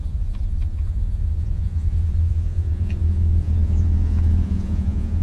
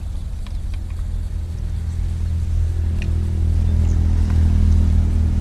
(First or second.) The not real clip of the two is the first